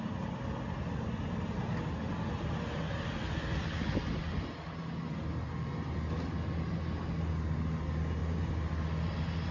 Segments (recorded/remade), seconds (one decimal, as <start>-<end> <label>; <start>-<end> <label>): 0.0-9.5 recorded